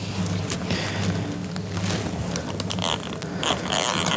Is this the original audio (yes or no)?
yes